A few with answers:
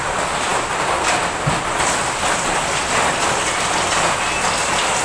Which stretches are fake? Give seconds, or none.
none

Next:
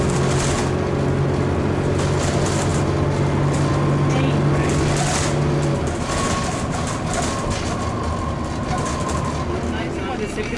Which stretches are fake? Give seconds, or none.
none

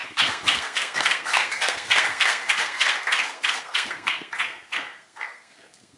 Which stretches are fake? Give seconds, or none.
0.0-6.0 (codec, SNAC)

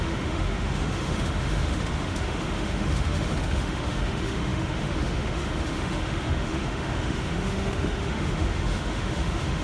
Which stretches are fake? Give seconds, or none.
0.0-9.6 (autoencoder, DAC-VAE)

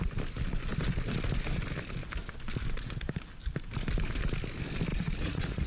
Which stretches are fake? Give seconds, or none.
4.9-5.7 (vocoder, Vocos)